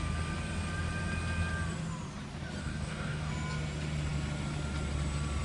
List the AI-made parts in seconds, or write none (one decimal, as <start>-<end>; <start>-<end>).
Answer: 2.6-3.3